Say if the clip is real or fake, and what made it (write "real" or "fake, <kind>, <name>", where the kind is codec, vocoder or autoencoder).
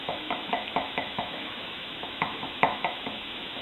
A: fake, autoencoder, DAC-VAE